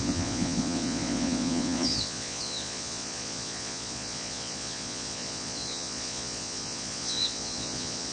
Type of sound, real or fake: fake